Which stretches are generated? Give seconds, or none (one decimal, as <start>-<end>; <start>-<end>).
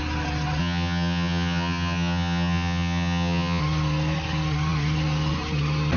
0.6-3.6